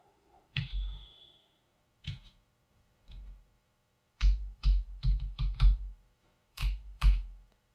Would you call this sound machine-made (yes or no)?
yes